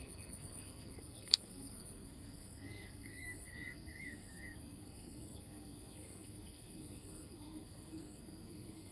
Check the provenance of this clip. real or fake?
fake